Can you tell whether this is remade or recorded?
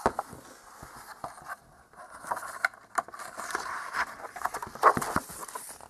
recorded